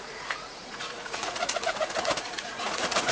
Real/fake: fake